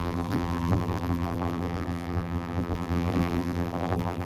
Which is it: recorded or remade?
remade